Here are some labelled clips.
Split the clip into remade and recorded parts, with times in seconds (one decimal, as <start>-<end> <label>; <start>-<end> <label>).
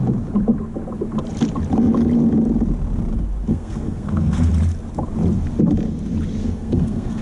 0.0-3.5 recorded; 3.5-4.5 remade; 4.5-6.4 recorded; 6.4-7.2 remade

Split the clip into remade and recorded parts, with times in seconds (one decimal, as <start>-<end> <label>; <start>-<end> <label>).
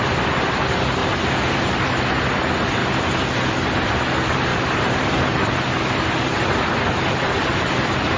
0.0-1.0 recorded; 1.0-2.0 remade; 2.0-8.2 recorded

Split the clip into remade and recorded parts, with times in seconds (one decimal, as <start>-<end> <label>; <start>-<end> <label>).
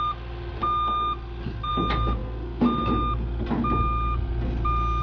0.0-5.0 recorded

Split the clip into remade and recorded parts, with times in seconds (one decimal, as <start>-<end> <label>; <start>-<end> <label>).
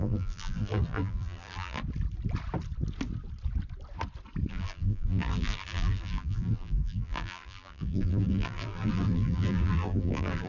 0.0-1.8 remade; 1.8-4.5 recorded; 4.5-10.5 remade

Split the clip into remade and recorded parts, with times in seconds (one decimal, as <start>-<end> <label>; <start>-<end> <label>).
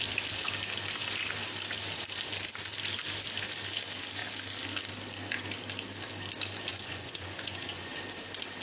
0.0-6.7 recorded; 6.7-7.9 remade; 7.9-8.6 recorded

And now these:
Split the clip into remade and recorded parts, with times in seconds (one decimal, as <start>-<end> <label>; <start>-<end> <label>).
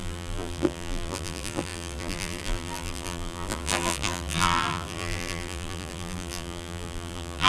0.0-7.5 remade